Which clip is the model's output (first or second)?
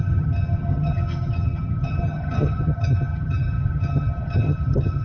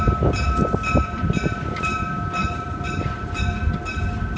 first